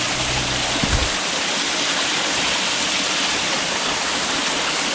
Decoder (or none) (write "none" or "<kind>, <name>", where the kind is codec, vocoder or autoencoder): none